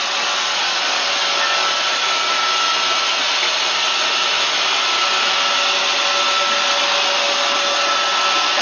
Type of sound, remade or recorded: recorded